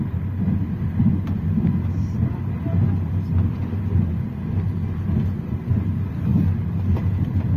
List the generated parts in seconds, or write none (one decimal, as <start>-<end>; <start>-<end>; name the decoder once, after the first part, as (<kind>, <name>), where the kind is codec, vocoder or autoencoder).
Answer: none